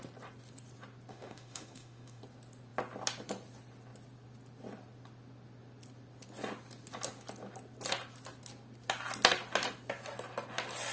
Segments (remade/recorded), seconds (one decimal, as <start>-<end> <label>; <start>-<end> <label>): 0.0-1.1 recorded; 1.1-2.2 remade; 2.2-10.9 recorded